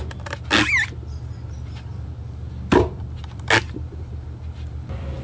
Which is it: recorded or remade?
recorded